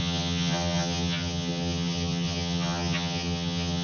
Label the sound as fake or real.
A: fake